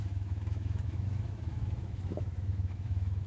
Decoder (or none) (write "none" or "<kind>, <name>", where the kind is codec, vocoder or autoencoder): autoencoder, DAC-VAE